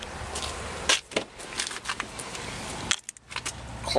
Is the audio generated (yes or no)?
no